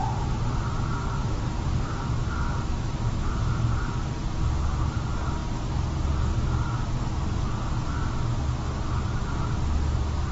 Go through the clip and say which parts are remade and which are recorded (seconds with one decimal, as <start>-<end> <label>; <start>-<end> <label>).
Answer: 0.0-1.2 recorded; 1.2-2.1 remade; 2.1-10.3 recorded